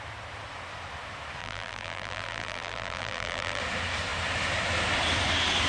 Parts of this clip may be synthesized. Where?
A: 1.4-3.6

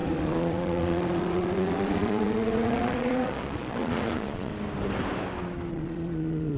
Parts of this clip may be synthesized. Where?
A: 0.0-4.5; 5.7-6.6

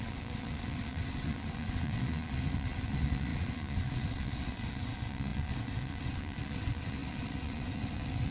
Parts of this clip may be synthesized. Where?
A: 0.0-8.3

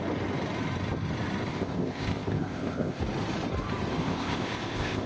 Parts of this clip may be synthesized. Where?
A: 1.5-3.0; 4.0-5.1

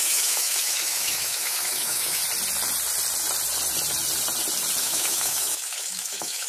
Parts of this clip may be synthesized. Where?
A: 0.0-2.2; 4.8-6.5

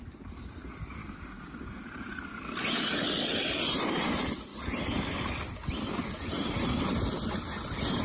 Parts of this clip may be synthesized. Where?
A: 1.0-1.8

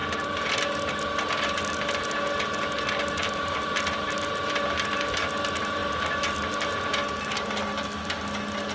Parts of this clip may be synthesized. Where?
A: none

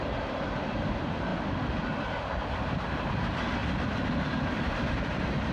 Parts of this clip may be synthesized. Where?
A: 0.0-1.3; 2.4-3.6; 4.3-5.5